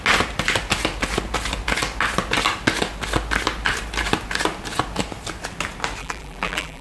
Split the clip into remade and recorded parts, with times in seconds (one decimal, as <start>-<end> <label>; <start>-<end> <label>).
0.0-6.0 recorded; 6.0-6.8 remade